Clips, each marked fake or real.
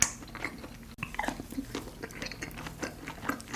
real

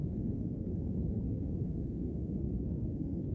fake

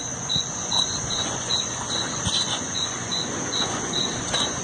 fake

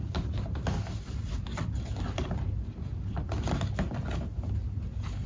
real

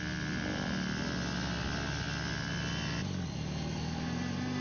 real